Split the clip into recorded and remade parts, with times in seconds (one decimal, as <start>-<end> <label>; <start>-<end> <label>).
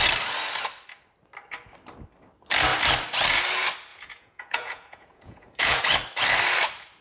0.0-3.9 recorded; 3.9-5.8 remade; 5.8-7.0 recorded